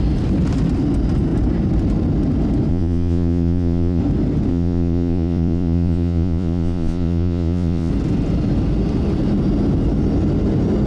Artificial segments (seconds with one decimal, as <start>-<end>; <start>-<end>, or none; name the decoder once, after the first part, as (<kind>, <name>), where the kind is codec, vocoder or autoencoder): 2.7-4.0 (vocoder, Vocos); 4.5-7.9